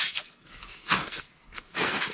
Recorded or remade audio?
remade